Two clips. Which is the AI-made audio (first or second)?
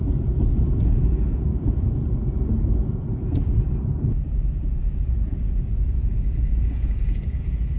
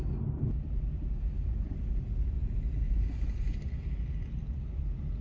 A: first